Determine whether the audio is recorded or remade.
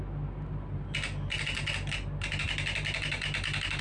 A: recorded